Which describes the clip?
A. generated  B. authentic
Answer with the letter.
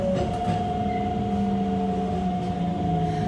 B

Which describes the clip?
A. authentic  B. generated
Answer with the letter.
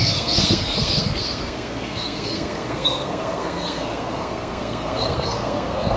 B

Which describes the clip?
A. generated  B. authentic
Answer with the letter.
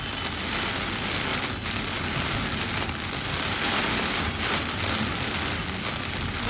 B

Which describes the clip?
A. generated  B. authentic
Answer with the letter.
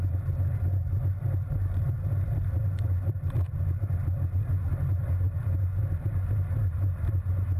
B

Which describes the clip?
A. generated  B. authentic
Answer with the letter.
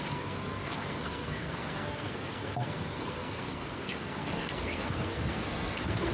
A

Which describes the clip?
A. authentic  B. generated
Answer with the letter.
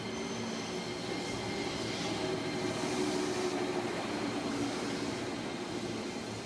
A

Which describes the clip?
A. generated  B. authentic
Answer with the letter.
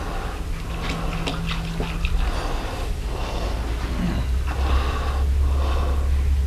B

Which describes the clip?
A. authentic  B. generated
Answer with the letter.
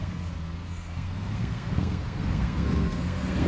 B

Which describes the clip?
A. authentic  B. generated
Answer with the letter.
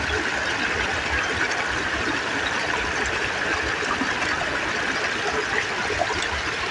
A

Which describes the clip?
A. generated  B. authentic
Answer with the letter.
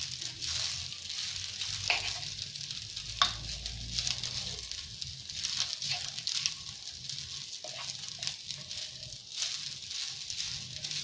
B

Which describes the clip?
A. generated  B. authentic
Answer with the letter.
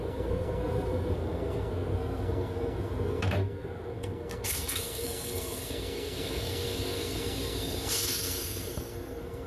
A